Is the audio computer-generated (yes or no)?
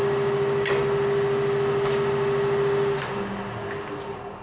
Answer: no